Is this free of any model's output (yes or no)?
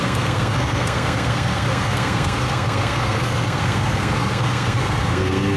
no